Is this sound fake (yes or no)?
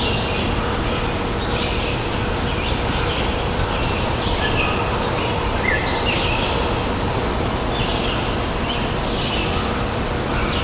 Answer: no